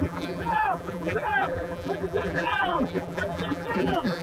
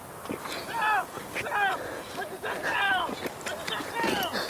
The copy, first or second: first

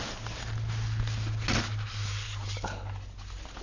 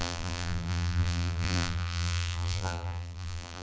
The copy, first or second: second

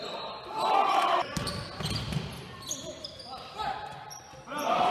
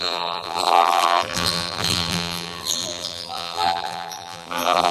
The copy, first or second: second